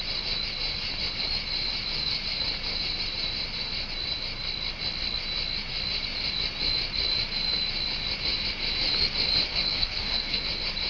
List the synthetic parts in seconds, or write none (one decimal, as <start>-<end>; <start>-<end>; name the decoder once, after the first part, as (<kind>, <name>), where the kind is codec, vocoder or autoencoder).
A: 9.5-10.4 (codec, SNAC)